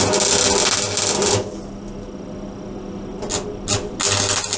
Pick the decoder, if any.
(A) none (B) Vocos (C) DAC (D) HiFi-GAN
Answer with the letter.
A